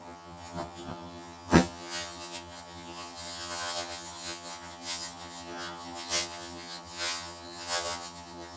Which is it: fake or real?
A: fake